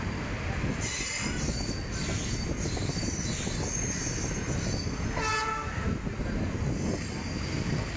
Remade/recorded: recorded